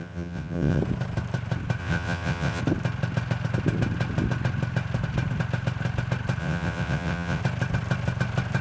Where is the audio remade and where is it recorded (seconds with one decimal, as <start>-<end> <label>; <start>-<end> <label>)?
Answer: 0.0-0.8 remade; 0.8-1.8 recorded; 1.8-2.6 remade; 2.6-6.4 recorded; 6.4-7.4 remade; 7.4-8.6 recorded

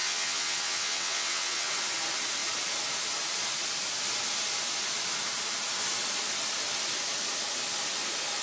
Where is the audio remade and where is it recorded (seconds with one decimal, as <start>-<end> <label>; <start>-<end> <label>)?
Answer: 0.0-1.7 remade; 1.7-8.4 recorded

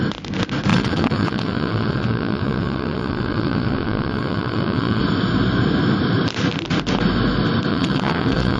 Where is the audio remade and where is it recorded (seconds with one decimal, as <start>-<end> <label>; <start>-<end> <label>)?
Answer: 0.0-0.7 recorded; 0.7-5.0 remade; 5.0-7.7 recorded; 7.7-8.6 remade

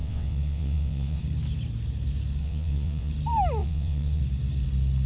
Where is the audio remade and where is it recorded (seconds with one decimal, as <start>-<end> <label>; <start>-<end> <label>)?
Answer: 0.0-1.2 remade; 1.2-2.4 recorded; 2.4-3.1 remade; 3.1-3.6 recorded; 3.6-4.2 remade; 4.2-5.1 recorded

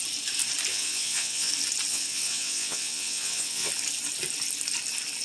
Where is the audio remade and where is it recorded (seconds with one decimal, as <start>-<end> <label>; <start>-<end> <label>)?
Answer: 0.0-0.7 recorded; 0.7-1.5 remade; 1.5-1.9 recorded; 1.9-3.7 remade; 3.7-5.2 recorded

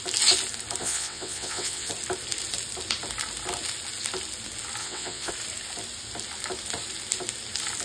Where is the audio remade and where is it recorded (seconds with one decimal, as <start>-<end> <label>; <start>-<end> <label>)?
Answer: 0.0-0.8 recorded; 0.8-1.9 remade; 1.9-4.8 recorded; 4.8-5.3 remade; 5.3-7.8 recorded

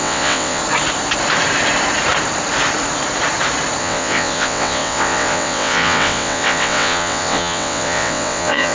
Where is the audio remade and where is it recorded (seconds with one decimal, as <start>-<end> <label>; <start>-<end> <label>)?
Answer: 0.0-0.6 remade; 0.6-3.8 recorded; 3.8-8.7 remade